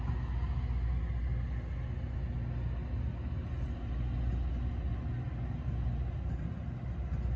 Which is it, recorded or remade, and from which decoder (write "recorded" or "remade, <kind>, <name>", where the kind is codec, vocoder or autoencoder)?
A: recorded